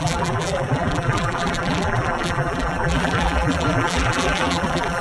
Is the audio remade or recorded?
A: remade